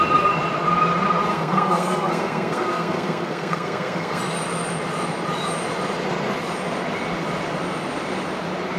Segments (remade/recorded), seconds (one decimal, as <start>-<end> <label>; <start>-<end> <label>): 0.0-1.3 recorded; 1.3-4.2 remade; 4.2-8.8 recorded